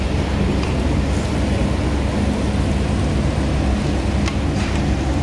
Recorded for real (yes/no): yes